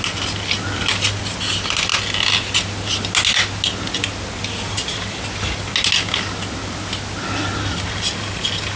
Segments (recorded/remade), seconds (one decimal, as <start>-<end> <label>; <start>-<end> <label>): 0.0-8.8 recorded